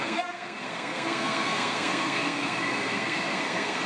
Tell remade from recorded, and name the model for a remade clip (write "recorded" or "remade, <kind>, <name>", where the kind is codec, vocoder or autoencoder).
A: remade, codec, SNAC